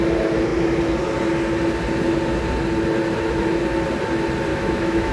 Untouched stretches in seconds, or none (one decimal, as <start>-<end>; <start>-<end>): 0.0-4.5